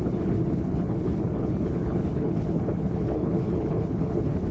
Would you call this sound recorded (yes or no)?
no